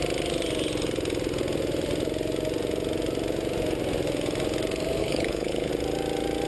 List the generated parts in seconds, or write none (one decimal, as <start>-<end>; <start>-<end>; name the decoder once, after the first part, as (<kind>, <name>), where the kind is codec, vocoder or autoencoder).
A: 5.0-5.7 (codec, HILCodec)